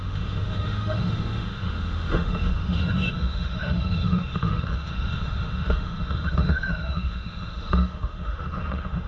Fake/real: fake